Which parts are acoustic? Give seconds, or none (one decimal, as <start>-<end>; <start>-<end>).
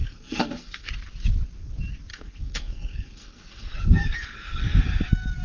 0.9-2.1; 4.8-5.4